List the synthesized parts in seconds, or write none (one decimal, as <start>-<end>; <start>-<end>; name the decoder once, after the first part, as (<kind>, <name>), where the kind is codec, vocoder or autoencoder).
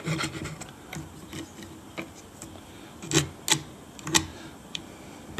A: 4.3-4.9 (vocoder, BigVGAN v2)